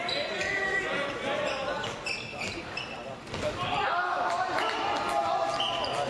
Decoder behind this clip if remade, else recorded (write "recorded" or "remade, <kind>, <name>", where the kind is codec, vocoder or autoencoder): recorded